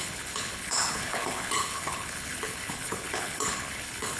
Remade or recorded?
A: remade